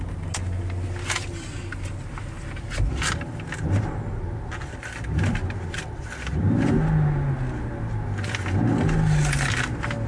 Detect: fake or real real